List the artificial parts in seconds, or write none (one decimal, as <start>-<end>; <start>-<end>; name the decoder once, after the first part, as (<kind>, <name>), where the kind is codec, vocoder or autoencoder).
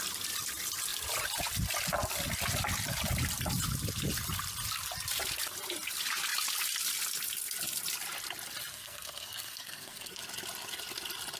8.7-10.2 (codec, SNAC)